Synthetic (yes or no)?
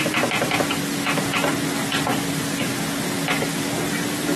no